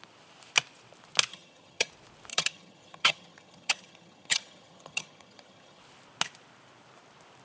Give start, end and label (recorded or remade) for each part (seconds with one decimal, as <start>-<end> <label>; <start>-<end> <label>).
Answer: 0.0-1.3 recorded; 1.3-1.9 remade; 1.9-2.3 recorded; 2.3-5.8 remade; 5.8-7.4 recorded